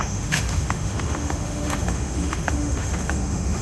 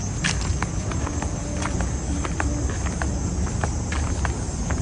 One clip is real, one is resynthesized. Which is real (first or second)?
second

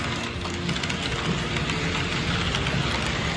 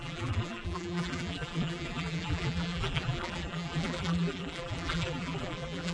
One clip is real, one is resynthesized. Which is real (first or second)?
first